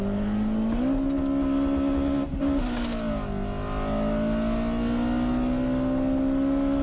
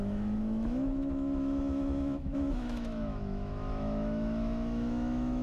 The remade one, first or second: second